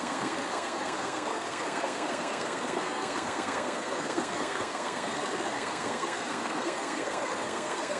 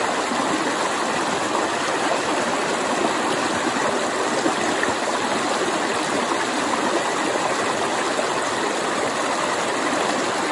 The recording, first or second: second